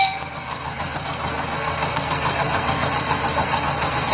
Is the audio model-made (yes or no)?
yes